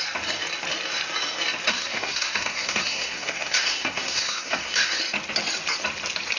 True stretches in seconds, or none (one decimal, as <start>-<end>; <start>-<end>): 0.0-1.7; 5.0-6.4